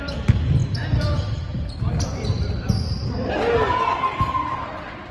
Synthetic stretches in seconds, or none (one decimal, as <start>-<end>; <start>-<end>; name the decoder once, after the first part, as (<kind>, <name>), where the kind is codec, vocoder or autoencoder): none